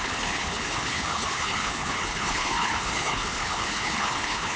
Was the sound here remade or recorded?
remade